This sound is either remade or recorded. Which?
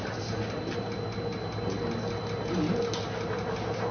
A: recorded